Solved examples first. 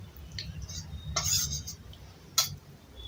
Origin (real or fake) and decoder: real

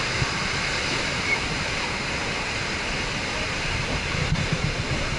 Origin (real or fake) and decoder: fake, vocoder, BigVGAN v2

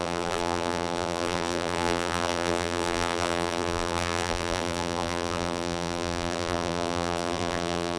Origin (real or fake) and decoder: fake, vocoder, BigVGAN v2